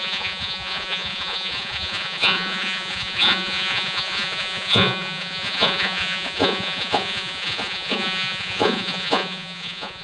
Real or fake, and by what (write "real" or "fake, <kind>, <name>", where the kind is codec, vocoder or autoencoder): fake, vocoder, Vocos